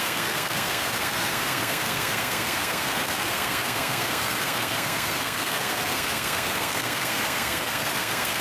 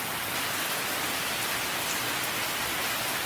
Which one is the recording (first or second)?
second